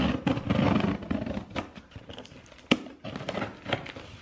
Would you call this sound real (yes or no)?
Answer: yes